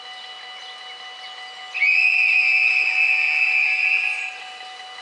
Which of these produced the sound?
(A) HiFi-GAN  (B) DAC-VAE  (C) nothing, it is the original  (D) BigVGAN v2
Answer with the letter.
C